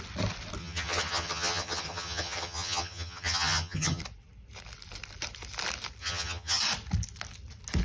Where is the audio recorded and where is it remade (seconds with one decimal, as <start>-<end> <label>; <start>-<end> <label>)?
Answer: 0.0-0.6 recorded; 0.6-4.0 remade; 4.0-6.0 recorded; 6.0-6.6 remade; 6.6-7.8 recorded